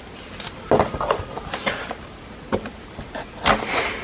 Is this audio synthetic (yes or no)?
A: no